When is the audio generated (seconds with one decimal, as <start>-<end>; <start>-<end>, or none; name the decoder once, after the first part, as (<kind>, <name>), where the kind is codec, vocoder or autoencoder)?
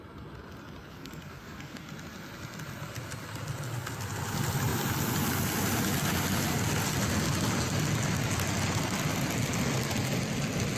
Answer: 0.9-1.8 (codec, SNAC)